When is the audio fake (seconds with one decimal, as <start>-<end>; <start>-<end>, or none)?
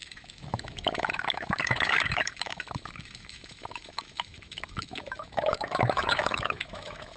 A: 0.0-7.2